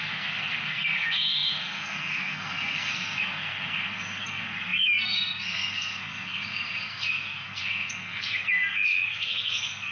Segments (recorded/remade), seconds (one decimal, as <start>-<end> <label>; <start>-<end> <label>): 0.0-9.9 remade

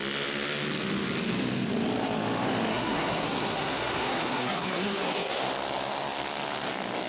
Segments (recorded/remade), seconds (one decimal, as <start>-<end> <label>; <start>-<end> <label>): 0.0-2.7 recorded; 2.7-5.4 remade; 5.4-7.1 recorded

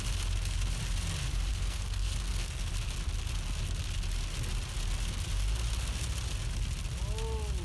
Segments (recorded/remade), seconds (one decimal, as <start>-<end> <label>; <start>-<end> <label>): 0.0-1.5 recorded; 1.5-2.7 remade; 2.7-7.6 recorded

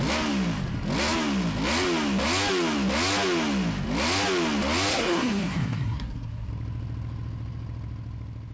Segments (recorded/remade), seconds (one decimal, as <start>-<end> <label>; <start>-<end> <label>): 0.0-4.9 recorded; 4.9-6.5 remade; 6.5-8.5 recorded

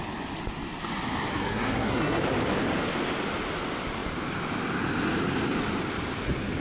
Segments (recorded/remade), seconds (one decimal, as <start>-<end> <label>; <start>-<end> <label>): 0.0-1.3 recorded; 1.3-2.2 remade; 2.2-6.6 recorded

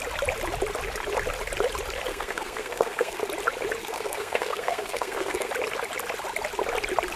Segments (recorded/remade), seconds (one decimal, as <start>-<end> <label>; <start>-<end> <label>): 0.0-2.1 recorded; 2.1-3.2 remade; 3.2-3.8 recorded; 3.8-5.5 remade; 5.5-7.2 recorded

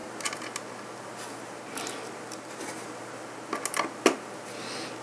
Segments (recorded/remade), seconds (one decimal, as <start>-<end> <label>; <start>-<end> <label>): 0.0-5.0 recorded